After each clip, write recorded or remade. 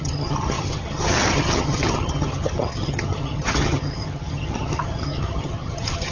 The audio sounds remade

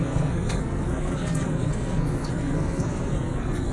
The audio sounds remade